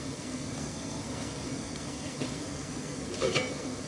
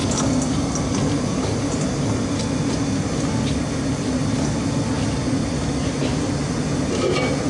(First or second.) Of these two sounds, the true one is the second